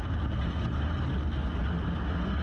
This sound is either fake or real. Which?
real